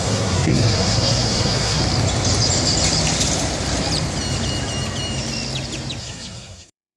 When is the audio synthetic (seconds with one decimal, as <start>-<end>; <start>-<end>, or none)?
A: 0.0-1.8; 6.0-7.0